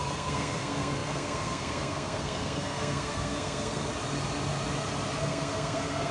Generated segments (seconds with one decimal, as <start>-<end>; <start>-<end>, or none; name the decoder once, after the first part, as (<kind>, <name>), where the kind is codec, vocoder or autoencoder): 0.0-3.9 (codec, SNAC); 5.2-6.1